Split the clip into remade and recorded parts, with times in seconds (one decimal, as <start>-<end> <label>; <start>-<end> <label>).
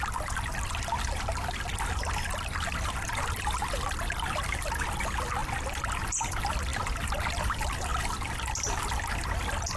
0.0-9.8 recorded